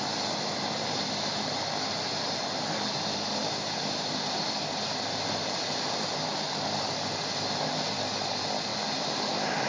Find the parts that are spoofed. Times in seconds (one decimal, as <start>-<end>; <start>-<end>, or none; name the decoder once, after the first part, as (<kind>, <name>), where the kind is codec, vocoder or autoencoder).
3.4-4.6 (vocoder, BigVGAN v2); 8.7-9.7